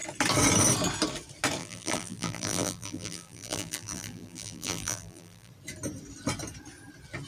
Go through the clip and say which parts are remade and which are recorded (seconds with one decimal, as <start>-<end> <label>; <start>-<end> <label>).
0.0-1.6 recorded; 1.6-5.5 remade; 5.5-7.3 recorded